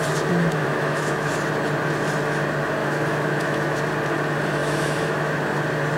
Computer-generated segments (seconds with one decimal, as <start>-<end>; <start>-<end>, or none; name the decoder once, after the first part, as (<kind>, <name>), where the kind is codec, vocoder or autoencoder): 0.6-1.3 (autoencoder, DAC-VAE); 2.8-3.8; 4.6-5.3